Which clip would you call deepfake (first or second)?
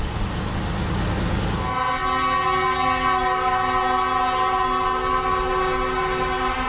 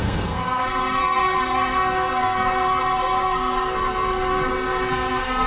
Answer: second